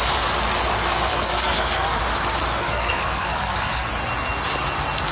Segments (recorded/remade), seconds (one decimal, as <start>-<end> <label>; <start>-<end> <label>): 0.0-1.1 recorded; 1.1-2.0 remade; 2.0-2.6 recorded; 2.6-3.9 remade; 3.9-5.1 recorded